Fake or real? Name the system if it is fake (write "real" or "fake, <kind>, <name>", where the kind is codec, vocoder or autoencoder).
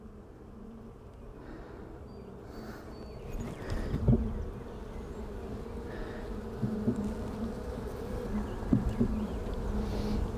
real